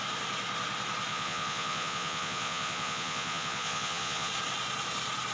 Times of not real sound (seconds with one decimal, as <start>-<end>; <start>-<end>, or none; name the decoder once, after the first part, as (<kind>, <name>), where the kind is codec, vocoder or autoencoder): 1.1-4.3 (vocoder, Vocos)